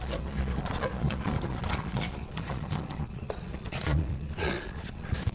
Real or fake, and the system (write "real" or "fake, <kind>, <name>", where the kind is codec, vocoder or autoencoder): fake, vocoder, Vocos